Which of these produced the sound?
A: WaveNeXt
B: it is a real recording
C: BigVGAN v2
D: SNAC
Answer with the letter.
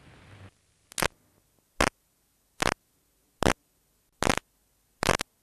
B